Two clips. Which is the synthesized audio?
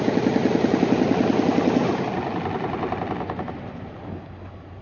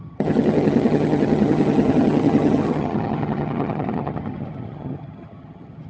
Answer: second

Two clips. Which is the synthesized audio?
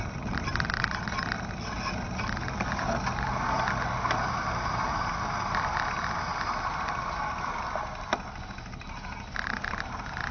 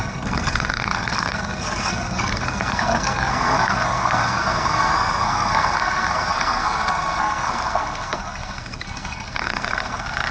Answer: second